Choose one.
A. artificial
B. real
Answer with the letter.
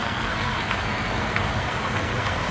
A